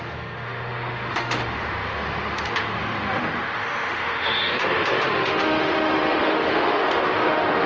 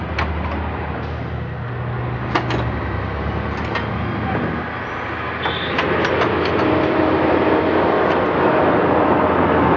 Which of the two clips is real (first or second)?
second